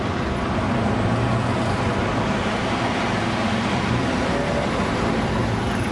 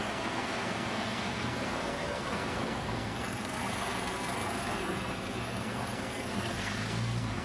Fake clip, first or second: second